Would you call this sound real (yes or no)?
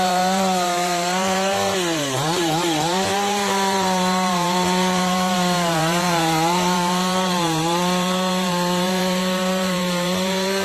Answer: no